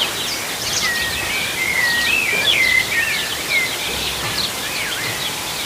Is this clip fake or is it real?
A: real